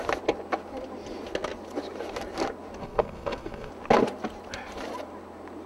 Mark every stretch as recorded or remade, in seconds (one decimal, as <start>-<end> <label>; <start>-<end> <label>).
0.0-2.8 recorded; 2.8-3.7 remade; 3.7-5.7 recorded